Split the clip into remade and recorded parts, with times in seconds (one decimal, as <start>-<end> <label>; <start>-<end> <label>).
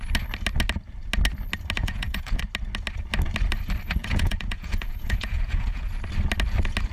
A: 0.0-1.8 recorded; 1.8-2.4 remade; 2.4-4.0 recorded; 4.0-5.9 remade; 5.9-6.9 recorded